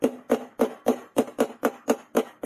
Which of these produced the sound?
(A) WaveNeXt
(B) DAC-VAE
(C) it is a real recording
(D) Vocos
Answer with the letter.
C